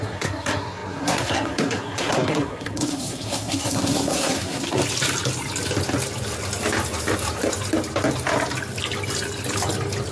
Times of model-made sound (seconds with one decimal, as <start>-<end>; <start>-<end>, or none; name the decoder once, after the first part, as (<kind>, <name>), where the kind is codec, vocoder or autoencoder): 0.0-4.8 (codec, SNAC)

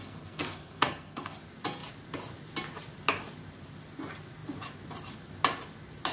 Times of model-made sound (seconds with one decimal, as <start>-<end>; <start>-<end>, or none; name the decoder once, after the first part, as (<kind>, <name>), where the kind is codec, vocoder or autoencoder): 0.0-1.4 (codec, SNAC)

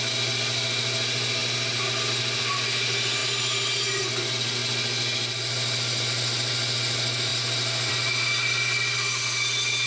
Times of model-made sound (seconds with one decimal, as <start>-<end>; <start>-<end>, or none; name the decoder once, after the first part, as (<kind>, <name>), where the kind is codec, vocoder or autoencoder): none